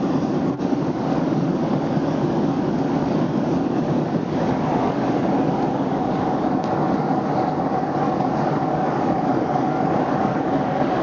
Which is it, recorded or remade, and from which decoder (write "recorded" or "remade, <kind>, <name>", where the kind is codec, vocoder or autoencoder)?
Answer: remade, codec, DAC